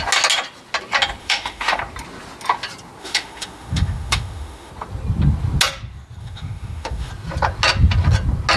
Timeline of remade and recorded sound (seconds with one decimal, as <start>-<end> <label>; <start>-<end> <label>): 0.0-1.2 recorded; 1.2-1.8 remade; 1.8-3.0 recorded; 3.0-4.7 remade; 4.7-6.2 recorded; 6.2-7.1 remade; 7.1-8.6 recorded